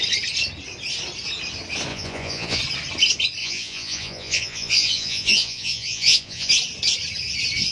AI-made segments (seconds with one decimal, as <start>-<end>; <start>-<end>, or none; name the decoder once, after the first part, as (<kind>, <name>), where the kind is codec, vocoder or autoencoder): 1.9-2.6 (vocoder, Vocos); 3.4-6.5